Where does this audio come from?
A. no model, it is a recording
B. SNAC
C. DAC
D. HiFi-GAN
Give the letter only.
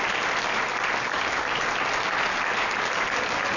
A